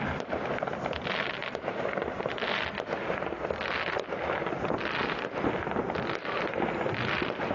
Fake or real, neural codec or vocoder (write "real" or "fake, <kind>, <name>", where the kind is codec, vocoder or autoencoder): real